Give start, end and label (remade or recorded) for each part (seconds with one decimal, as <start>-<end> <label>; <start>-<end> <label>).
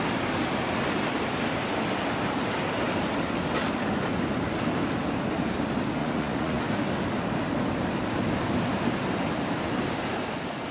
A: 0.0-6.0 recorded; 6.0-6.6 remade; 6.6-10.7 recorded